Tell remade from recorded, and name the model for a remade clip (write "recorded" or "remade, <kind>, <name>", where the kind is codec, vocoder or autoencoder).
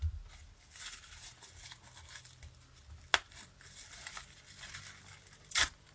recorded